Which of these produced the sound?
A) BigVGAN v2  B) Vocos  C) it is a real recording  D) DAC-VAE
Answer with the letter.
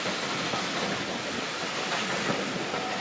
C